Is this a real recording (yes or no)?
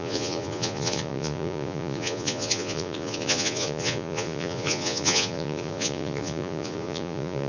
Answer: no